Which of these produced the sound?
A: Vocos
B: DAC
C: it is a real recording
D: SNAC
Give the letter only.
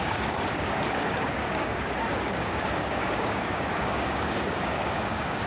B